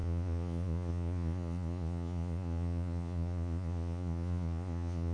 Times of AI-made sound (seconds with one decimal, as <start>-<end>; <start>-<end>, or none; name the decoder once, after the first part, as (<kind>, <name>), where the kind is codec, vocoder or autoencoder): 0.0-5.1 (vocoder, Vocos)